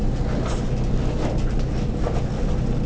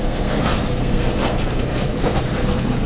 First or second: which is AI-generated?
second